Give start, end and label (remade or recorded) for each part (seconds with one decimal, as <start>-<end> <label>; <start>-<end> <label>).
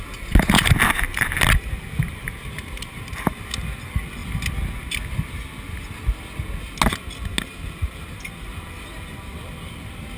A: 0.0-2.1 recorded; 2.1-3.3 remade; 3.3-10.2 recorded